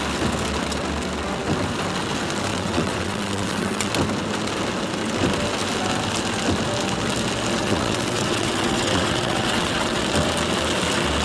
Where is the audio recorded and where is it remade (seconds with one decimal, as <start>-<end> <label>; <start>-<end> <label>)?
0.0-2.5 recorded; 2.5-3.9 remade; 3.9-7.6 recorded; 7.6-10.0 remade; 10.0-11.2 recorded